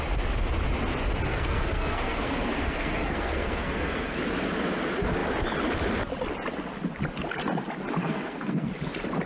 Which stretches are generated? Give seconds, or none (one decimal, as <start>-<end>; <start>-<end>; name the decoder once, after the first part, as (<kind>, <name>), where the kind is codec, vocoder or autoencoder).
1.3-4.2 (codec, SNAC); 8.0-8.7